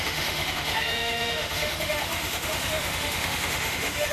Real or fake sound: fake